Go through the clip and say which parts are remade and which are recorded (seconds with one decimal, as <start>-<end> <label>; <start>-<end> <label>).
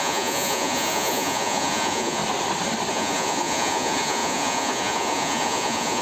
0.0-2.2 remade; 2.2-2.9 recorded; 2.9-6.0 remade